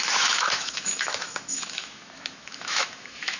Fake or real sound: fake